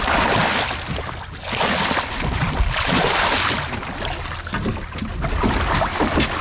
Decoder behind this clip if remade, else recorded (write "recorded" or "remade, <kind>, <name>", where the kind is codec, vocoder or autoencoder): recorded